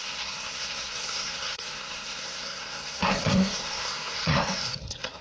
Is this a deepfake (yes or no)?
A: yes